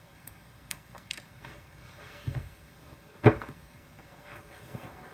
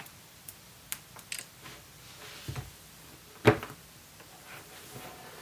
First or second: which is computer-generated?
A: first